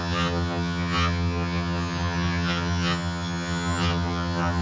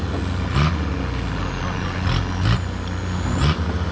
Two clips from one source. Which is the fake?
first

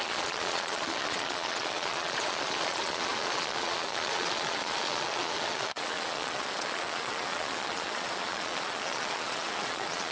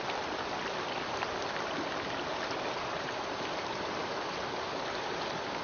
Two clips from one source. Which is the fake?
first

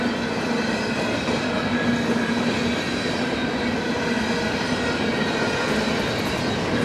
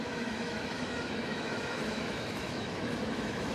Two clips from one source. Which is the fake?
second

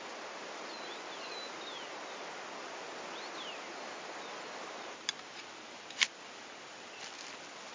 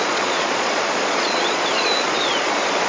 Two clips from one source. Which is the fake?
second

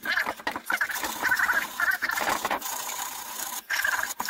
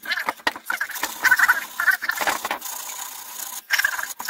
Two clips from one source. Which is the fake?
first